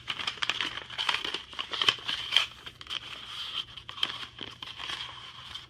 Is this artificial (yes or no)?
yes